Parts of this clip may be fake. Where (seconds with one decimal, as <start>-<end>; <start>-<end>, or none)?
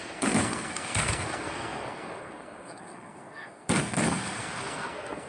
0.0-5.3